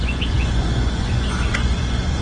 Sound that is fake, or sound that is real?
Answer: fake